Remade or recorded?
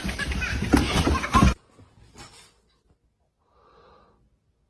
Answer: recorded